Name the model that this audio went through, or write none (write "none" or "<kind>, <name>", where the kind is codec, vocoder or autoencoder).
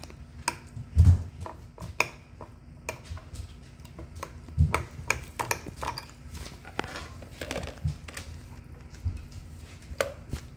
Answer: none